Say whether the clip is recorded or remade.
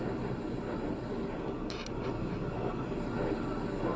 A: recorded